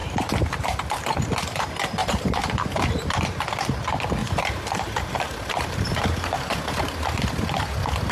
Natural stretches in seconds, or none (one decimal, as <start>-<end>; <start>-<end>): 0.8-2.0; 3.5-4.2; 6.6-8.1